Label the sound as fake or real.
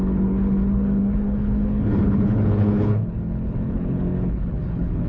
fake